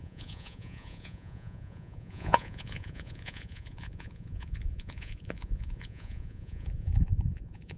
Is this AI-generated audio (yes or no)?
yes